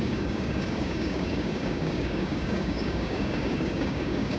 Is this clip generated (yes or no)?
yes